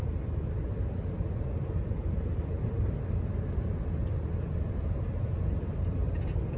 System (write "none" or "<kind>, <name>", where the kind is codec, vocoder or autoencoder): vocoder, BigVGAN v2